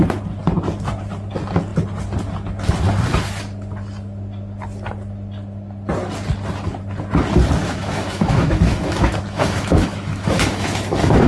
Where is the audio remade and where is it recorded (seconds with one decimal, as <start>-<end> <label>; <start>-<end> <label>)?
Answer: 0.0-7.6 recorded; 7.6-11.3 remade